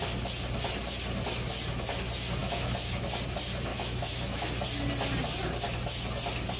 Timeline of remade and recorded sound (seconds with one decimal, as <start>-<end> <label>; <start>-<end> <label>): 0.0-2.4 recorded; 2.4-3.0 remade; 3.0-3.7 recorded; 3.7-4.5 remade; 4.5-6.6 recorded